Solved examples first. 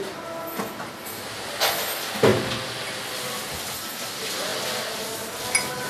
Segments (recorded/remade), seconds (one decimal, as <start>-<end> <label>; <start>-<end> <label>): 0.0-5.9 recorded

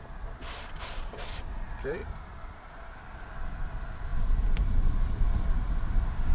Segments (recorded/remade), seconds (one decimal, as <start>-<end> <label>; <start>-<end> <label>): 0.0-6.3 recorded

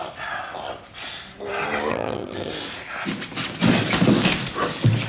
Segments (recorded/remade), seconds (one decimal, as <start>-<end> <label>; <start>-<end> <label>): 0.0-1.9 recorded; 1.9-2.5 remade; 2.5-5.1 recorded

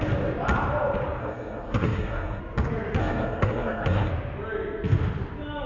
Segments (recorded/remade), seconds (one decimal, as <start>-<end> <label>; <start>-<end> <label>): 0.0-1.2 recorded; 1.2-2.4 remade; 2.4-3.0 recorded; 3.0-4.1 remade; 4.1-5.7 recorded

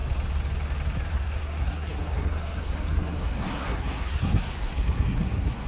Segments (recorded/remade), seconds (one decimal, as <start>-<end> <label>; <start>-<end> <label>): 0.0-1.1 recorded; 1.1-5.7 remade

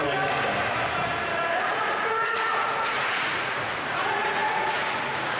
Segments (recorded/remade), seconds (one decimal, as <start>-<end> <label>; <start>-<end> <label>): 0.0-1.6 recorded; 1.6-5.4 remade

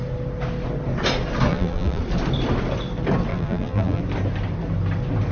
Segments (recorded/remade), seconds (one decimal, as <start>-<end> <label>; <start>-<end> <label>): 0.0-1.5 recorded; 1.5-2.0 remade; 2.0-3.3 recorded; 3.3-4.0 remade; 4.0-5.3 recorded